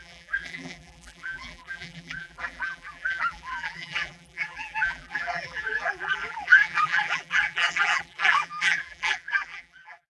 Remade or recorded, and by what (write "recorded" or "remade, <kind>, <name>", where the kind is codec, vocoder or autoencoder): remade, vocoder, BigVGAN v2